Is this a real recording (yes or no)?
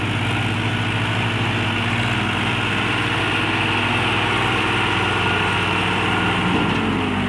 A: yes